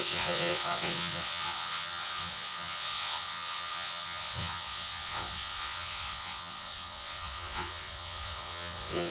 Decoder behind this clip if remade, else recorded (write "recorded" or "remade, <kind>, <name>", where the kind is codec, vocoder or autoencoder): remade, vocoder, WaveNeXt